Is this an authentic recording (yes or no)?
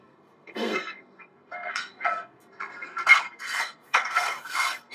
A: no